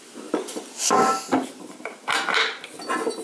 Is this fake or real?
real